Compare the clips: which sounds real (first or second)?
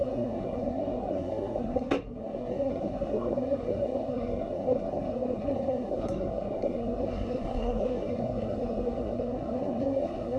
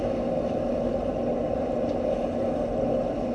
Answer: second